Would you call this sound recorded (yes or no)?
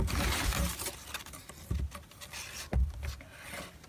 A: yes